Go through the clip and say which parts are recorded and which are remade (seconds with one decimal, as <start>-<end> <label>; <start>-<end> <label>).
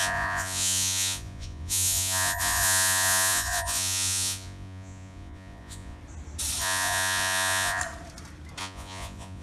0.0-6.0 remade; 6.0-6.6 recorded; 6.6-7.8 remade; 7.8-8.6 recorded; 8.6-9.4 remade